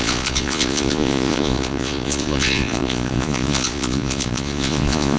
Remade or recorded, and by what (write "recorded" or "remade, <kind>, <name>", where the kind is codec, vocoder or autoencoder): remade, vocoder, Vocos